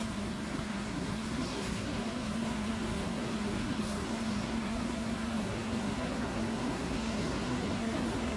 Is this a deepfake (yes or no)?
yes